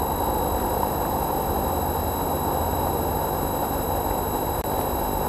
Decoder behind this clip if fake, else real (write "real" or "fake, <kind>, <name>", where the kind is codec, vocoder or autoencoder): real